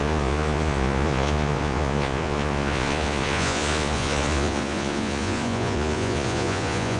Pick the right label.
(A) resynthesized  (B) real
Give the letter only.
A